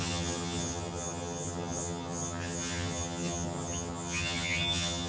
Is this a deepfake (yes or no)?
yes